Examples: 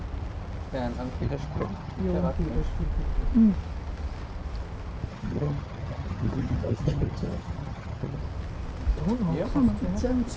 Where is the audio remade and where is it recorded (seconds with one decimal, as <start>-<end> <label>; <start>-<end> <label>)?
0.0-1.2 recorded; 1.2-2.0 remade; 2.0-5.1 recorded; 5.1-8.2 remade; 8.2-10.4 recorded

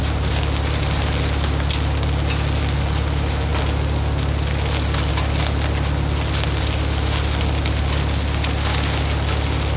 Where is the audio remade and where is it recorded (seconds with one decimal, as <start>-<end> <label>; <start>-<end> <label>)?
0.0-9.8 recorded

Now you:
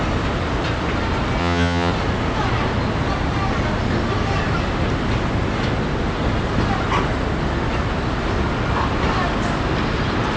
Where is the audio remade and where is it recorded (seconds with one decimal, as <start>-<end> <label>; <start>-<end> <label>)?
0.0-1.4 recorded; 1.4-1.9 remade; 1.9-10.4 recorded

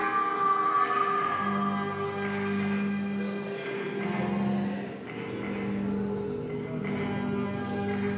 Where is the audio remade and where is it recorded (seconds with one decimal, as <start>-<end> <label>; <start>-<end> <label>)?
0.0-8.2 recorded